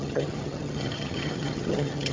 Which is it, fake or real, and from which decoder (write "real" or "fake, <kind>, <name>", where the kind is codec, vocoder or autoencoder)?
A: fake, vocoder, HiFi-GAN